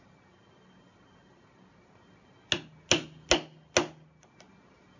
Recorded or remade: recorded